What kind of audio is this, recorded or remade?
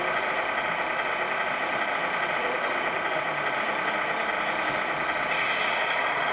recorded